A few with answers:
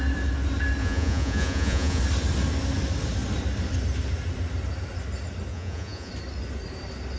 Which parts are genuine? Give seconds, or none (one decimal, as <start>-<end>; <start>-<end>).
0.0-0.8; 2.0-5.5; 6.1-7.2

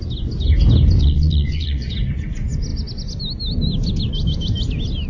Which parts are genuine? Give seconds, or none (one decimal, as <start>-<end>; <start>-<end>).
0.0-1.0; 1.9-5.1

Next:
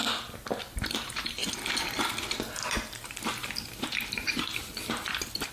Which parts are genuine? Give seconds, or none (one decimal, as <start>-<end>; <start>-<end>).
0.0-0.9; 1.4-3.7

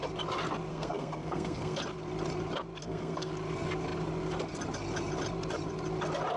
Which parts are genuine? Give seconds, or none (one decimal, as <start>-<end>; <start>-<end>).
0.0-0.7; 1.8-2.8; 3.3-6.4

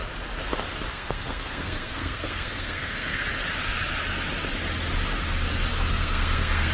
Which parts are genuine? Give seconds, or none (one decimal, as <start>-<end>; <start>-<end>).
0.0-0.9; 3.3-5.9

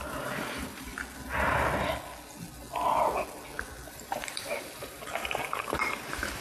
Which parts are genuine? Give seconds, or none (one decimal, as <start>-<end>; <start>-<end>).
0.9-3.9

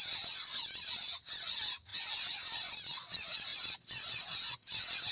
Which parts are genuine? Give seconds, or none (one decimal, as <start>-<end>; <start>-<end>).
0.0-5.1